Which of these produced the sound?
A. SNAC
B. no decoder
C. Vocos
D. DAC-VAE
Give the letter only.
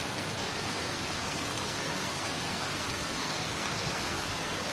A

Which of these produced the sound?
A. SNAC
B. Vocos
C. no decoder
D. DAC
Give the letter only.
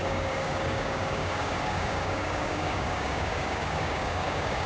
D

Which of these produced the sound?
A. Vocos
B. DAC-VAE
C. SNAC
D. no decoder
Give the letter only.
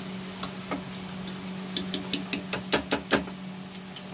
D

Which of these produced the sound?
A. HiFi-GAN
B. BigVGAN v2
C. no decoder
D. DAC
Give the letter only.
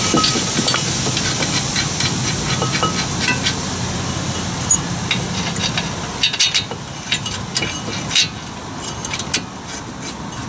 C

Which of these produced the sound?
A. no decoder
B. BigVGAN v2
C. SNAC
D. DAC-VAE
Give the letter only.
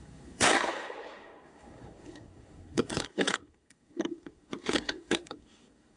C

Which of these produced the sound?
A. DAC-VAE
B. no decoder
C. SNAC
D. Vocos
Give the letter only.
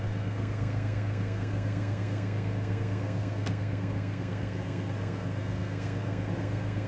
C